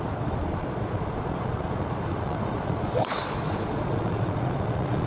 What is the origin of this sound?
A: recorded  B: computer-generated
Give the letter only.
B